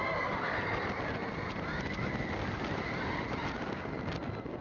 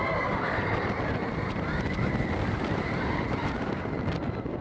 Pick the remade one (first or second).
second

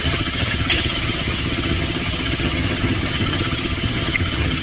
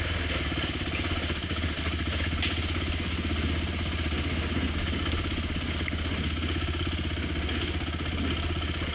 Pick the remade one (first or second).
first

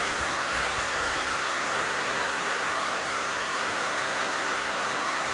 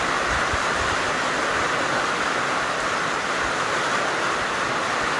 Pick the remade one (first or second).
first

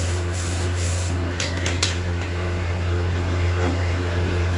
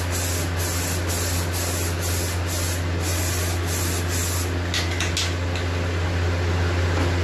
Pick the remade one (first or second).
first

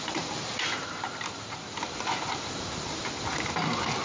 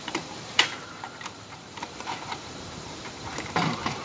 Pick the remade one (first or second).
second